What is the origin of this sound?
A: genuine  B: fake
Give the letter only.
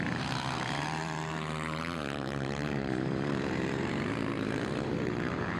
B